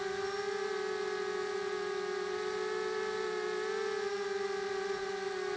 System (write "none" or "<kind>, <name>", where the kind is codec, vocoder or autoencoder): none